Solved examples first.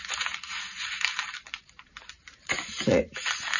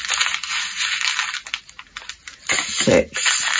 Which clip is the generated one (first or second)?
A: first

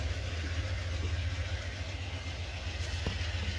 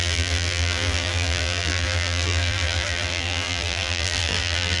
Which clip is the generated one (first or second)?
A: second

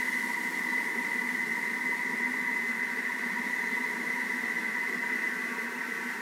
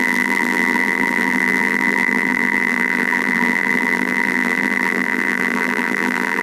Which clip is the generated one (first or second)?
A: second